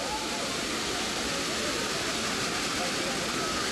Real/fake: real